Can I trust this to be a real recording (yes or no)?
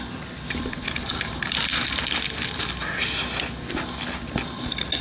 yes